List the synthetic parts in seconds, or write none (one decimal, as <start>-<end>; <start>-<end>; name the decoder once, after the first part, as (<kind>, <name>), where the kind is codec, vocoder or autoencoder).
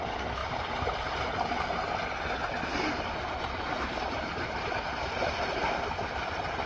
0.4-1.9 (vocoder, BigVGAN v2); 2.7-5.6